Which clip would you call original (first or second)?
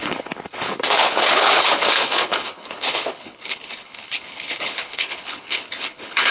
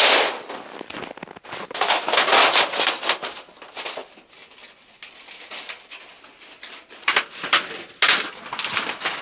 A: second